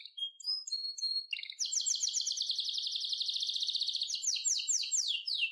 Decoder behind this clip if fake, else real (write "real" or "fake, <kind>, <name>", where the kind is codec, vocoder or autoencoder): real